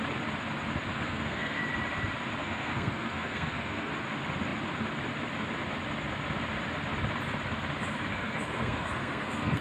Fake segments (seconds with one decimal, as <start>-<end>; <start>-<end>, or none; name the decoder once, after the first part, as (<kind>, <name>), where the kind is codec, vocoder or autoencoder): 0.9-1.6 (codec, SNAC); 2.4-3.9; 8.1-9.6